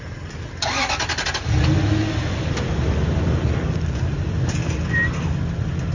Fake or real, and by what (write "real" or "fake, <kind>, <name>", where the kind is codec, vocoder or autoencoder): real